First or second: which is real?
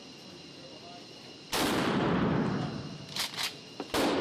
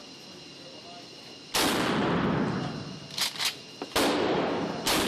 second